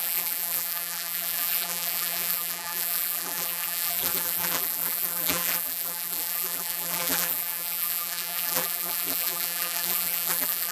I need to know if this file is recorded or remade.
remade